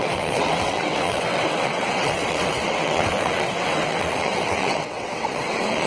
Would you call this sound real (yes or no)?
no